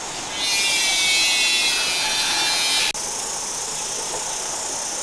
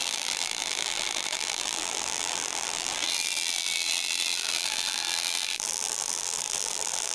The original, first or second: first